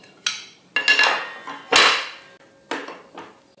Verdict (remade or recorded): recorded